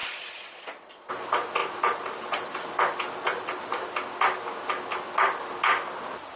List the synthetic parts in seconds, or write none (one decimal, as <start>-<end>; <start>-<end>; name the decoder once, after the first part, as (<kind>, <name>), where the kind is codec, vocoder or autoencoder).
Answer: 0.0-1.1 (vocoder, Vocos)